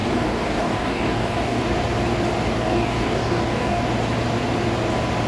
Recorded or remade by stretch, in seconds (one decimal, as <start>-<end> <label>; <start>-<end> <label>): 0.0-1.6 remade; 1.6-2.6 recorded; 2.6-3.8 remade; 3.8-5.3 recorded